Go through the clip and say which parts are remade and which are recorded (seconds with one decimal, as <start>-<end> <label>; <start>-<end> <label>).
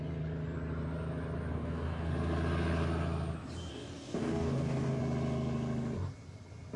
0.0-1.5 recorded; 1.5-2.1 remade; 2.1-3.7 recorded; 3.7-5.0 remade; 5.0-6.8 recorded